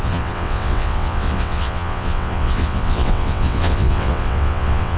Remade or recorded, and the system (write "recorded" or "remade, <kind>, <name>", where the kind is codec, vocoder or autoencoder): remade, vocoder, WaveNeXt